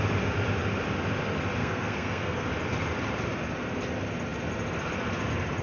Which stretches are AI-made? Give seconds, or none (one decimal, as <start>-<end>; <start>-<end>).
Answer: 1.6-2.5